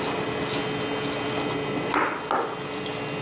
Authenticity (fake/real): real